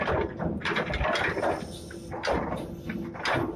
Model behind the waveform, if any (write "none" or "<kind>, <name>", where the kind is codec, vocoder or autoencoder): none